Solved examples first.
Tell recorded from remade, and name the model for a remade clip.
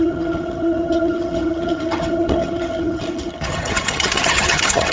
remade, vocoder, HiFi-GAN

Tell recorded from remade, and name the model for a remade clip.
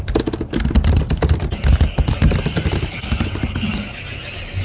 recorded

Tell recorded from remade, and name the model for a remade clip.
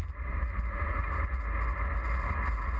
recorded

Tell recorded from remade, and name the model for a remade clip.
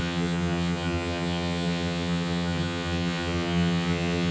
remade, vocoder, HiFi-GAN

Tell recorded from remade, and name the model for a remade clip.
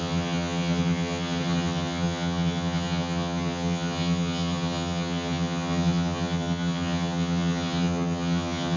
remade, vocoder, HiFi-GAN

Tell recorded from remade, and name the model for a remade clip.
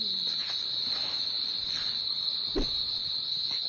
recorded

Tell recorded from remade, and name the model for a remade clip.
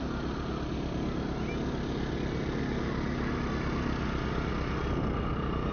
recorded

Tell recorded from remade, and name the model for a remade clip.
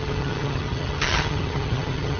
remade, vocoder, HiFi-GAN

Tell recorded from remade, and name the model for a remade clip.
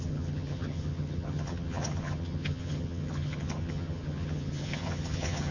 remade, vocoder, HiFi-GAN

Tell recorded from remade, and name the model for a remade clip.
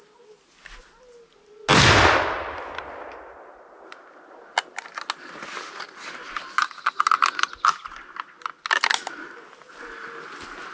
recorded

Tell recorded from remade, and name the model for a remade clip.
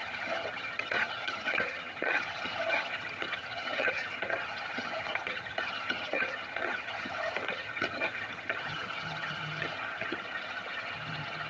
remade, vocoder, HiFi-GAN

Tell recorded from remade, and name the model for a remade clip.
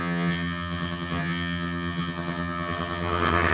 remade, vocoder, HiFi-GAN